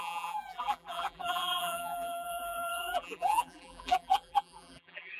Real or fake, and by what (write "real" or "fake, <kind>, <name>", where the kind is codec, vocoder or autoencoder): fake, vocoder, BigVGAN v2